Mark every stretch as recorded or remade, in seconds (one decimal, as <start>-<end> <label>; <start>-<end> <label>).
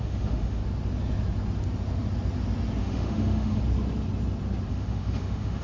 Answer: 0.0-0.6 remade; 0.6-2.8 recorded; 2.8-3.6 remade; 3.6-4.7 recorded; 4.7-5.6 remade